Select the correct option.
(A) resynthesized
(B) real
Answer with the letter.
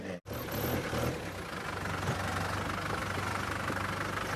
B